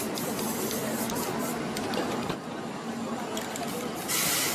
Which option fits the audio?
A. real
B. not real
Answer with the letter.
B